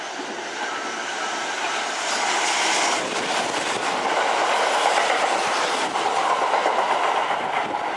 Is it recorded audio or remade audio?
recorded